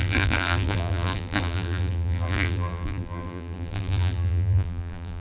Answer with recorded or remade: remade